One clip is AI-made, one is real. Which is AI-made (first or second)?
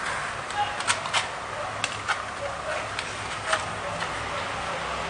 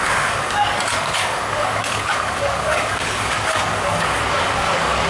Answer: second